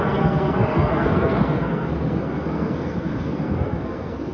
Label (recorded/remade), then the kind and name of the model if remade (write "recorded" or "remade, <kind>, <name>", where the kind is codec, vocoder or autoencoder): remade, codec, SNAC